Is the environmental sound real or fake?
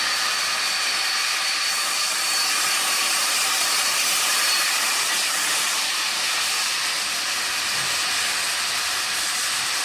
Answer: real